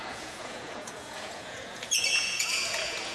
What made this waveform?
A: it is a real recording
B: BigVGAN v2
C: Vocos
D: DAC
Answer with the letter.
C